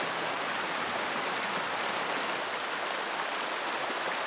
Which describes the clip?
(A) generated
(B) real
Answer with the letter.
B